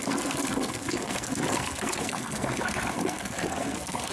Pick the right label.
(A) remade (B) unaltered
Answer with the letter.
A